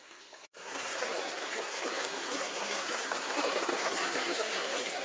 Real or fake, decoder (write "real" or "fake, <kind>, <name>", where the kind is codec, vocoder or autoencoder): fake, codec, SNAC